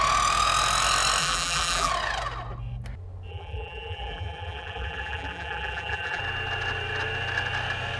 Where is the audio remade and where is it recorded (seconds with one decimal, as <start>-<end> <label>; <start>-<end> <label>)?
0.0-1.2 recorded; 1.2-1.9 remade; 1.9-3.3 recorded; 3.3-6.2 remade; 6.2-8.0 recorded